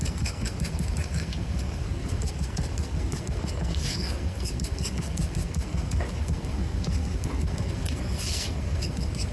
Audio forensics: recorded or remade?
remade